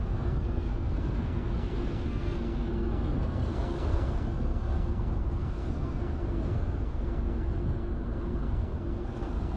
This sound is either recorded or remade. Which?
remade